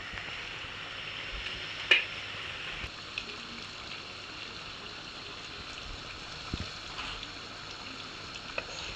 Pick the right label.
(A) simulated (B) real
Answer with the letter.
B